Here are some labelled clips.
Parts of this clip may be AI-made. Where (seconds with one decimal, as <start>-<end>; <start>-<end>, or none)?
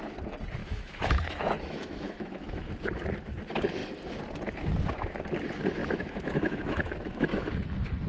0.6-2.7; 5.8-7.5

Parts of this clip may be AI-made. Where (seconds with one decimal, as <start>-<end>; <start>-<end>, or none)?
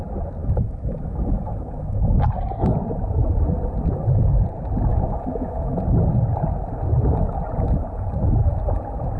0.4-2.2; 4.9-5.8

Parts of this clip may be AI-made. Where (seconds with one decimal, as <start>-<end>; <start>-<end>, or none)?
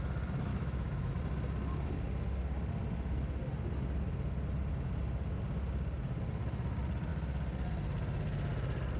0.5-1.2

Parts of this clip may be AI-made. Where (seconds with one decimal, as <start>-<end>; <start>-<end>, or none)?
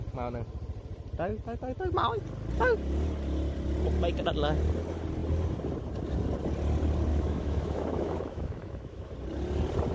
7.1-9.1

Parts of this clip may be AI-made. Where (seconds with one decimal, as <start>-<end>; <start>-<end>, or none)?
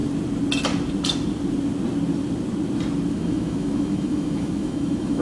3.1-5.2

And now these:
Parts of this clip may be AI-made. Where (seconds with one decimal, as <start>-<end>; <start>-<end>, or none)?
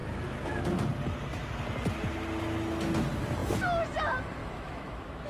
4.4-5.3